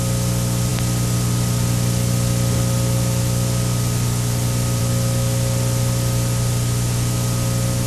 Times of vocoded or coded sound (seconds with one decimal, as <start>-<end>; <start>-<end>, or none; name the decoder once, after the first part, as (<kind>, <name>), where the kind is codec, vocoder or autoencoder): none